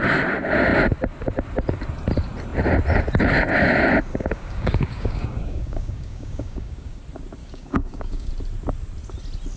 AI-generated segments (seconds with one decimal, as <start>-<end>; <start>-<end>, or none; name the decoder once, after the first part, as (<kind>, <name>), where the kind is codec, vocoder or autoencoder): 4.1-7.0 (codec, DAC); 7.4-8.3